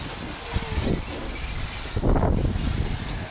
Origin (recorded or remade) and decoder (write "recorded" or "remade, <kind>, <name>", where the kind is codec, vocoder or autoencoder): recorded